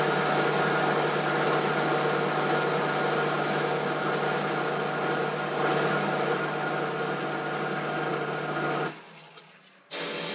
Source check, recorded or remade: recorded